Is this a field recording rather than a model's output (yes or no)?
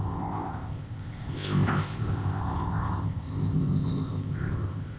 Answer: no